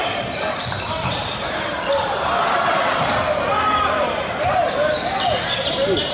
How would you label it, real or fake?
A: fake